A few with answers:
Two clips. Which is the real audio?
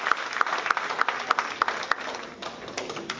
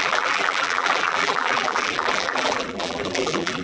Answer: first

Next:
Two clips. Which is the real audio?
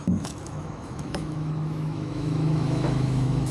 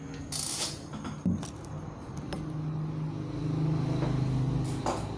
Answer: second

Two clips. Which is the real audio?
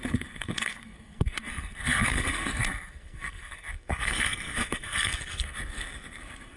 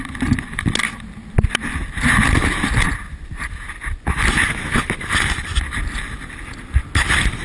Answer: second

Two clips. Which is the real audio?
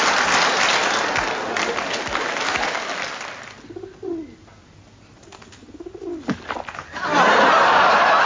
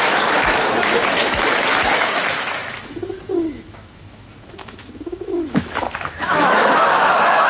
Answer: first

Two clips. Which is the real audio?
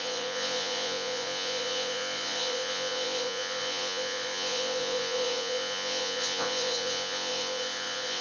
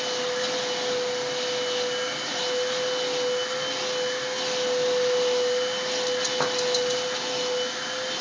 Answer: second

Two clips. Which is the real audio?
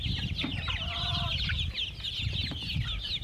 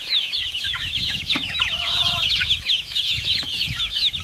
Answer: first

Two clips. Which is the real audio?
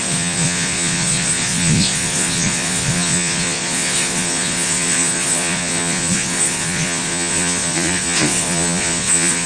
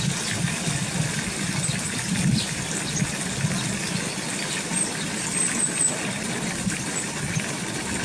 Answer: second